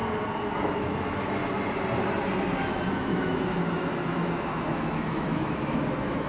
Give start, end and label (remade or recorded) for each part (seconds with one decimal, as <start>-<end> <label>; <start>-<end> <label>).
0.0-0.8 recorded; 0.8-1.4 remade; 1.4-2.9 recorded; 2.9-6.3 remade